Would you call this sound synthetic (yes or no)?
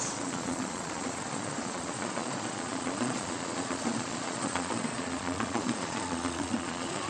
yes